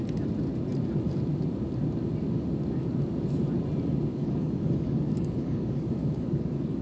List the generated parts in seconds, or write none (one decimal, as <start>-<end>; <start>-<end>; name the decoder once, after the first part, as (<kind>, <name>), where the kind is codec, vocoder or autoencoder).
4.1-6.8 (codec, DAC)